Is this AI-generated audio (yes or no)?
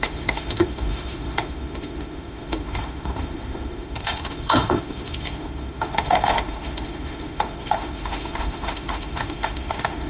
yes